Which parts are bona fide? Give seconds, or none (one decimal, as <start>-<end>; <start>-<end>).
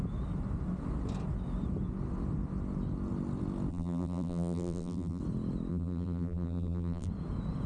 0.0-3.7; 5.2-5.7; 7.1-7.7